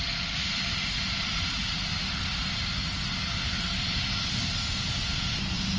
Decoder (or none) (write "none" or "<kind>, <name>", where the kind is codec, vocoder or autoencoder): none